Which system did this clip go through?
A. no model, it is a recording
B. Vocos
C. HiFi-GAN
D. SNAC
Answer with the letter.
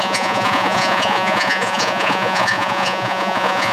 B